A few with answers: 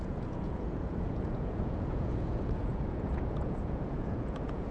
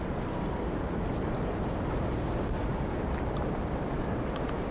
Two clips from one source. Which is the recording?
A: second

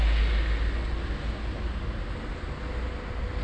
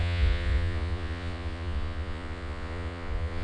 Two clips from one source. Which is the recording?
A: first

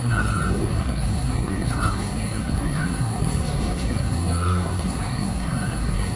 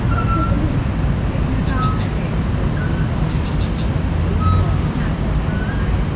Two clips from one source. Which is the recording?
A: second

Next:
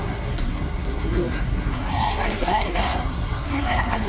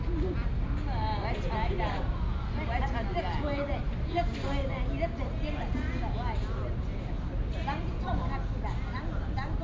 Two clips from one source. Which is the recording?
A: second